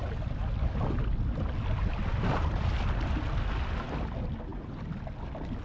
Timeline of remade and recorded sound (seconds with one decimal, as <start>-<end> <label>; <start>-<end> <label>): 0.0-5.6 recorded